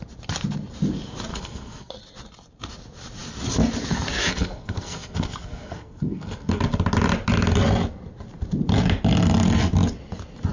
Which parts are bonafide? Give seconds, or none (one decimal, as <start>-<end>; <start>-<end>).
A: 0.0-1.3; 1.9-4.2; 6.6-10.5